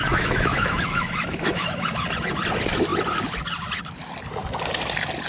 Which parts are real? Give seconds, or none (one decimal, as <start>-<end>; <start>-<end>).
1.8-5.3